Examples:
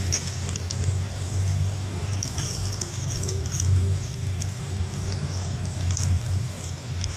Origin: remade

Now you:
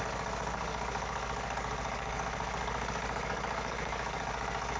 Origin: remade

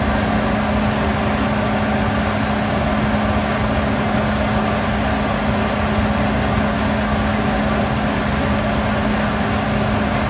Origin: recorded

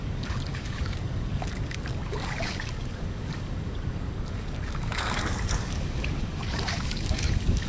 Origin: remade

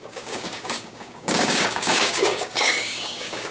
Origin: remade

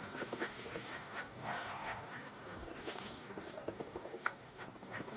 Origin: remade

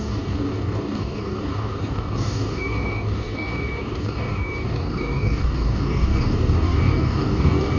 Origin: remade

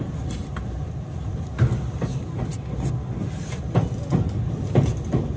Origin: recorded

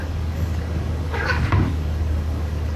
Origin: remade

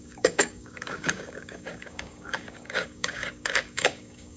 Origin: remade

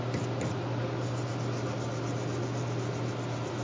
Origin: recorded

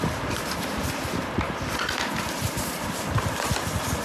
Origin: recorded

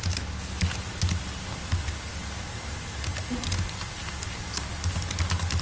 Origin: recorded